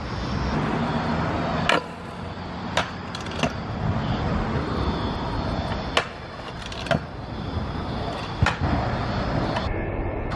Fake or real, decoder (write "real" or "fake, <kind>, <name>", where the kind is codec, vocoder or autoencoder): real